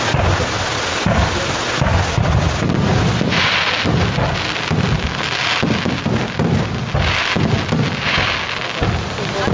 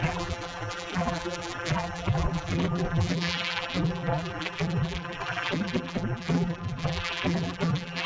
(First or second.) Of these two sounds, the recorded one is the first